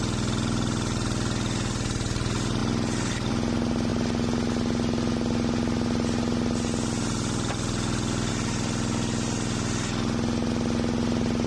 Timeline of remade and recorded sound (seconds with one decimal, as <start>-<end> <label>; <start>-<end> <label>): 0.0-11.5 recorded

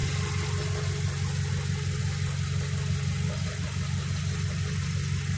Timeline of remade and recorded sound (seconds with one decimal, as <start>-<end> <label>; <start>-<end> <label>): 0.0-5.4 recorded

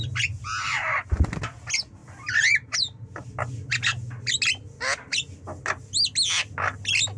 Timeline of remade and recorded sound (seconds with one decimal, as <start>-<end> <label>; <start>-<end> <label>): 0.0-7.2 recorded

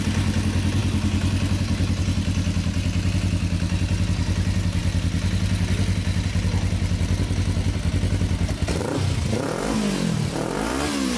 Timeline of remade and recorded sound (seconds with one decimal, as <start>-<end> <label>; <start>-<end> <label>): 0.0-11.2 recorded

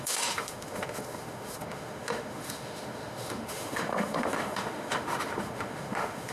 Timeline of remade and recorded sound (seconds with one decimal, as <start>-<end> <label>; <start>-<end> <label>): 0.0-6.3 remade